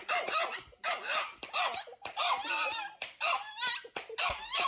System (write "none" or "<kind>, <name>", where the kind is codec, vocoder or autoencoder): vocoder, BigVGAN v2